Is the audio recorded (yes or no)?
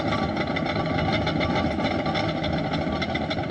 yes